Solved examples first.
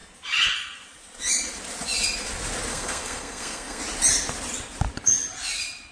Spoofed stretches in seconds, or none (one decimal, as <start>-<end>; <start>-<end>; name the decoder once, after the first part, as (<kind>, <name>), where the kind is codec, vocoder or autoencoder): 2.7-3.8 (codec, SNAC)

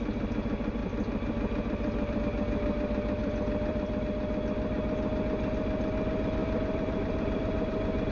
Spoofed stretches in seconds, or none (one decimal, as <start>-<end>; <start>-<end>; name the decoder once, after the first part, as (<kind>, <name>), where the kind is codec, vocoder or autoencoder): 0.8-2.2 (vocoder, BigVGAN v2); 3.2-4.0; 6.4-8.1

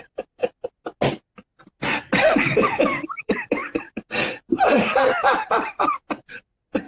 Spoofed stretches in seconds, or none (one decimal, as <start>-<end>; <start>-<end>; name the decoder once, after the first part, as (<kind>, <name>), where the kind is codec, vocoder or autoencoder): 0.0-0.4 (vocoder, BigVGAN v2); 3.2-3.6; 5.5-6.9